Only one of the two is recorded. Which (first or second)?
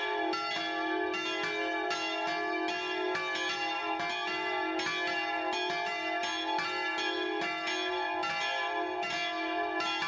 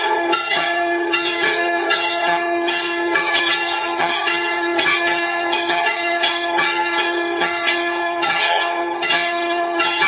first